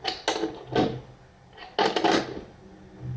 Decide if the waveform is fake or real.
real